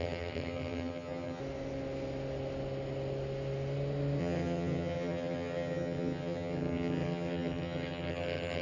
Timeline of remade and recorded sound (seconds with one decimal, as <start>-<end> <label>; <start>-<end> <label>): 0.0-1.4 remade; 1.4-4.2 recorded; 4.2-8.6 remade